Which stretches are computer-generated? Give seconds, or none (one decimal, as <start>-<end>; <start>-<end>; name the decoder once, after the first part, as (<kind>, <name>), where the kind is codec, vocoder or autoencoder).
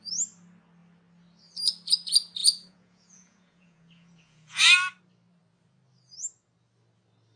2.4-4.6 (vocoder, Vocos)